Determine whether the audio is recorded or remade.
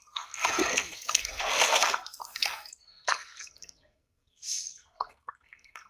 remade